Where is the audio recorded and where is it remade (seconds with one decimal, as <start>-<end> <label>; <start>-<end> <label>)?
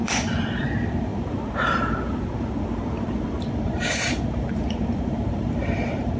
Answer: 0.0-6.2 remade